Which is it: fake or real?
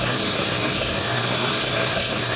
fake